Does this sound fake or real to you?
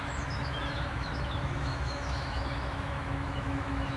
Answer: fake